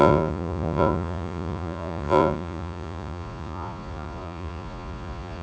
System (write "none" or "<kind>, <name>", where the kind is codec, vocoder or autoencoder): vocoder, Vocos